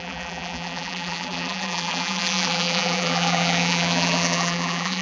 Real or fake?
fake